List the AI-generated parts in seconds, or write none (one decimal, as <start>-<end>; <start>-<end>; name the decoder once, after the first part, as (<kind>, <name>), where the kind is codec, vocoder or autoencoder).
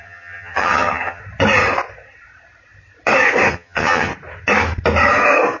0.0-1.2 (vocoder, HiFi-GAN); 3.5-4.1